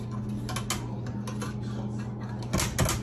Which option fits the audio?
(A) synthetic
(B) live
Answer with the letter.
B